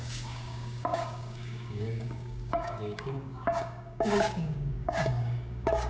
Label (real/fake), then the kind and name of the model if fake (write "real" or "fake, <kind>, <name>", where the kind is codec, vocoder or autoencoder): fake, codec, DAC